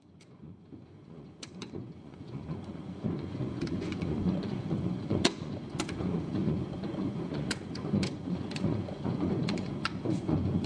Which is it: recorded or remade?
remade